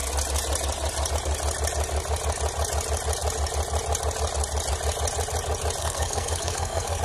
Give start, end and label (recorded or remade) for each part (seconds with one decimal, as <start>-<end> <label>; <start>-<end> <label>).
0.0-5.8 recorded; 5.8-7.0 remade

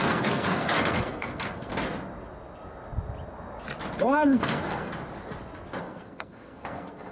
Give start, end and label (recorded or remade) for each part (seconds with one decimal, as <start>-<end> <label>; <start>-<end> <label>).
0.0-1.7 remade; 1.7-4.0 recorded; 4.0-4.9 remade; 4.9-5.8 recorded; 5.8-7.1 remade

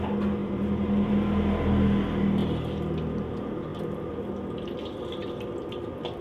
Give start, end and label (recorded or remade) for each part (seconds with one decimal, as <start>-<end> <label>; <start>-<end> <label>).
0.0-6.2 recorded